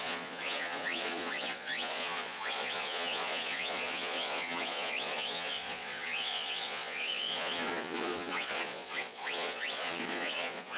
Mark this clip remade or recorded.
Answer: remade